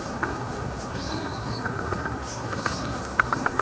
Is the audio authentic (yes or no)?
no